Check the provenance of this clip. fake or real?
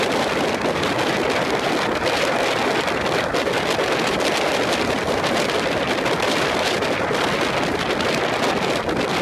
real